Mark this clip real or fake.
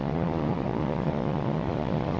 fake